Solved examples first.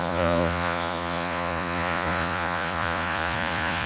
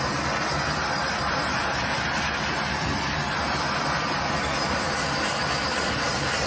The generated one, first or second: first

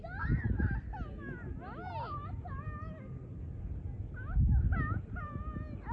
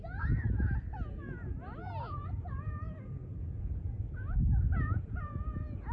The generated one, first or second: second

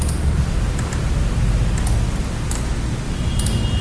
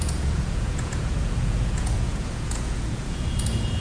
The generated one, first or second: second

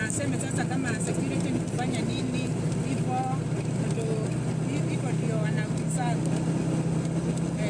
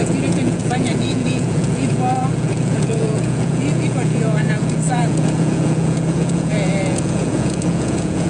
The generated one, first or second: second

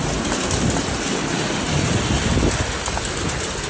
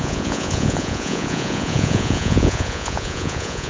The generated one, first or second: second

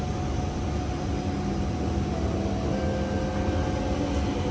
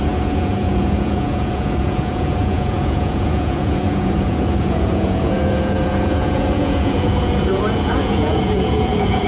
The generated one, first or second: second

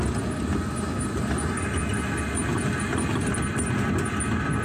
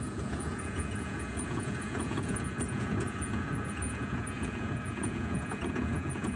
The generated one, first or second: second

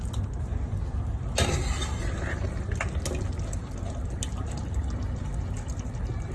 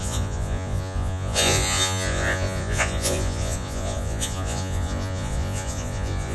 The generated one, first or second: second